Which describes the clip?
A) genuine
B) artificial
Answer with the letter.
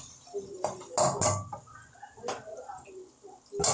A